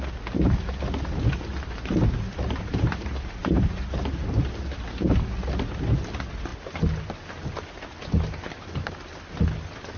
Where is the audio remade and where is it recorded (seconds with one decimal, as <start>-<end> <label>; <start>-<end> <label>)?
0.0-2.7 recorded; 2.7-4.5 remade; 4.5-10.0 recorded

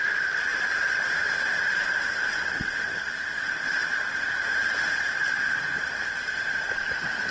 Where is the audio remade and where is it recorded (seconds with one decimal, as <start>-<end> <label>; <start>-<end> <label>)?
0.0-6.0 remade; 6.0-6.5 recorded; 6.5-7.3 remade